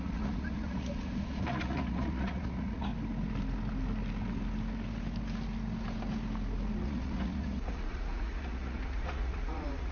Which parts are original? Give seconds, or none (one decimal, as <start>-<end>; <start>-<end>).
2.9-6.8